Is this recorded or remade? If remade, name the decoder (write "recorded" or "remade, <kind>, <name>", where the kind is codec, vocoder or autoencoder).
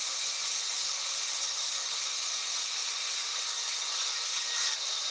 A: recorded